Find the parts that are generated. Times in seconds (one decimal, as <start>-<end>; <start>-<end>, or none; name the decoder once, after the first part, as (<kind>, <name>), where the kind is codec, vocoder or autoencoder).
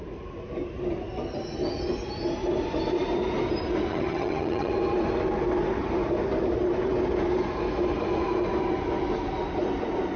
3.9-4.7 (vocoder, HiFi-GAN)